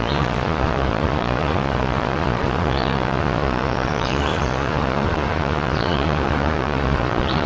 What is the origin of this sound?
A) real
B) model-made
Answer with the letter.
B